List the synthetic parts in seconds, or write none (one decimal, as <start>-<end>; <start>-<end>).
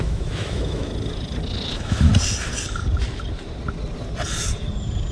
0.0-0.9; 1.7-2.1